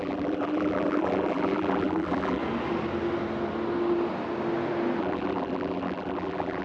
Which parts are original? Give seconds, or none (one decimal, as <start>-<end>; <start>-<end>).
2.4-5.0